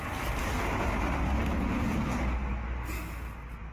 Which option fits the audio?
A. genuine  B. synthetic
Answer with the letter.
A